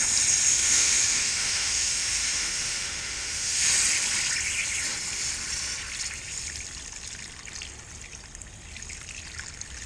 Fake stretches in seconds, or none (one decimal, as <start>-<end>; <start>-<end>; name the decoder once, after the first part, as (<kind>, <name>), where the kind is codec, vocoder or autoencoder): 0.5-3.7 (autoencoder, DAC-VAE)